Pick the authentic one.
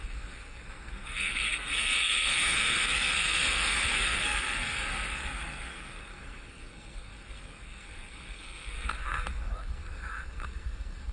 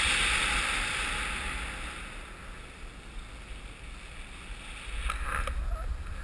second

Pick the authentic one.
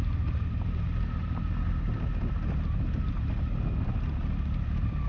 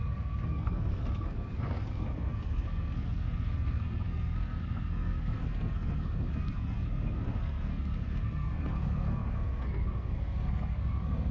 first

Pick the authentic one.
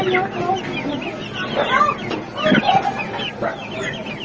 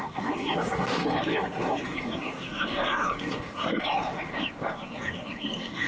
first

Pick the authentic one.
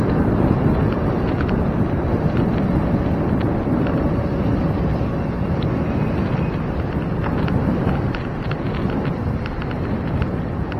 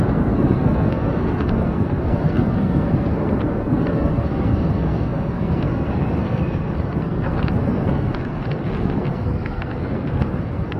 first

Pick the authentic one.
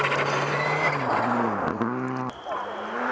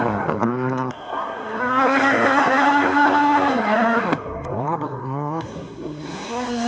first